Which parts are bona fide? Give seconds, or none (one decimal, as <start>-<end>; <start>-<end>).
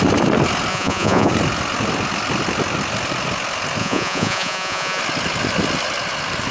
0.0-0.7; 1.3-3.8; 5.0-6.5